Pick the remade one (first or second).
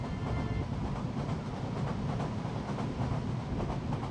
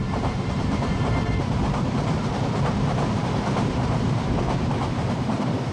second